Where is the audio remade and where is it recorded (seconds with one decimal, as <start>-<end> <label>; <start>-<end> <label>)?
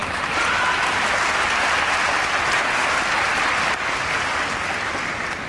0.0-0.6 remade; 0.6-5.5 recorded